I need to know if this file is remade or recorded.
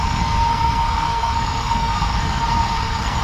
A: remade